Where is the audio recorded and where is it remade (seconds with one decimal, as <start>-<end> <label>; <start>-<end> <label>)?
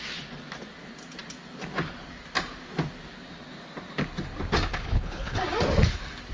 0.0-4.7 recorded; 4.7-5.4 remade; 5.4-6.3 recorded